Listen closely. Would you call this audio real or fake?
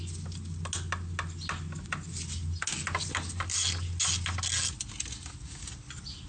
real